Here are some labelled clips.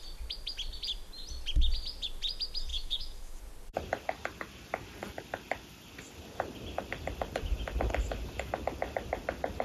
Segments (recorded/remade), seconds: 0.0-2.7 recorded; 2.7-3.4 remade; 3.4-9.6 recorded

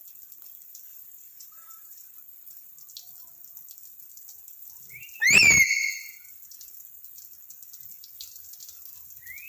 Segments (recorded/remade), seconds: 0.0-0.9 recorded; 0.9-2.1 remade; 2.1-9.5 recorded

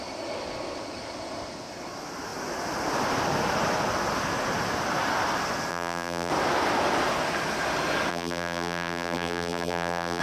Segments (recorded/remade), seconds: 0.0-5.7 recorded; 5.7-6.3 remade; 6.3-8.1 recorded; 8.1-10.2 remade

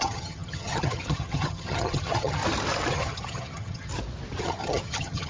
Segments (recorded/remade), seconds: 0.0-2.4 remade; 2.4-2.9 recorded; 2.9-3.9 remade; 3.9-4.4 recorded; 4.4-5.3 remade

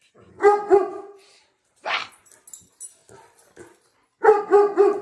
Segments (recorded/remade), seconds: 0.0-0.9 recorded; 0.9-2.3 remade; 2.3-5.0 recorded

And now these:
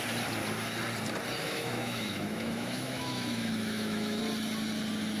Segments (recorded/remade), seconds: 0.0-1.4 recorded; 1.4-4.2 remade; 4.2-5.2 recorded

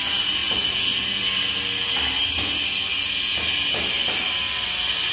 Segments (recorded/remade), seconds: 0.0-5.1 recorded